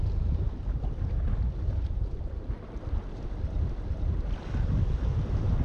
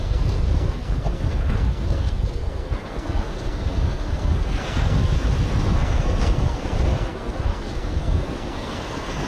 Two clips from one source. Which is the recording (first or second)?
first